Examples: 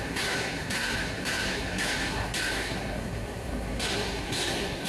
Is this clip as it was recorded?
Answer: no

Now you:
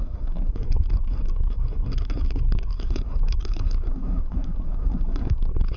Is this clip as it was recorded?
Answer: no